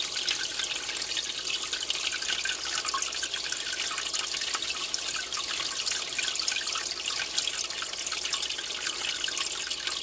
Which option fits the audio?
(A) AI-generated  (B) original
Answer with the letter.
B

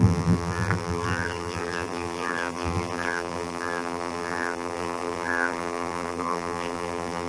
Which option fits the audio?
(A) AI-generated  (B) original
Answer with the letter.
A